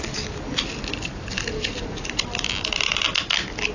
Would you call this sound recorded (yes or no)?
yes